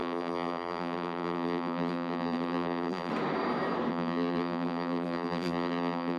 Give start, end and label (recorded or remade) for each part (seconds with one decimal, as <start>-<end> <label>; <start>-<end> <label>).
0.0-3.1 remade; 3.1-3.9 recorded; 3.9-6.2 remade